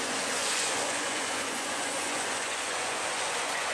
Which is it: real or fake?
fake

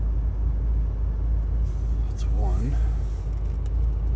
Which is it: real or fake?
real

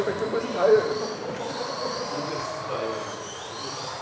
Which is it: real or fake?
real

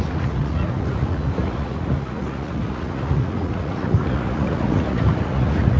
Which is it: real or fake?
fake